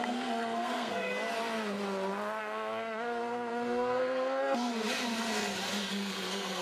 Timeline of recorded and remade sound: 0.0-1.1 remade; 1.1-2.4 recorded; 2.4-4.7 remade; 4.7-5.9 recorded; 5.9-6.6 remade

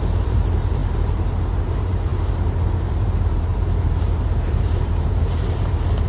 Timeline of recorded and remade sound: 0.0-2.1 remade; 2.1-2.8 recorded; 2.8-6.1 remade

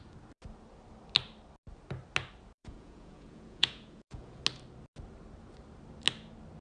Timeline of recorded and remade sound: 0.0-2.6 recorded; 2.6-4.4 remade; 4.4-6.6 recorded

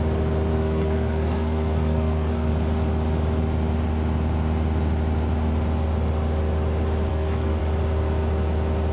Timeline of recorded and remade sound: 0.0-0.5 recorded; 0.5-2.5 remade; 2.5-7.1 recorded; 7.1-7.6 remade; 7.6-8.9 recorded

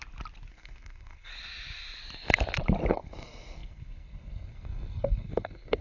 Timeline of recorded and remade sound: 0.0-0.5 recorded; 0.5-1.3 remade; 1.3-2.9 recorded; 2.9-5.8 remade

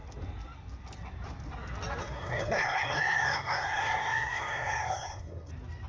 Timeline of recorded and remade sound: 0.0-2.0 recorded; 2.0-5.5 remade; 5.5-5.9 recorded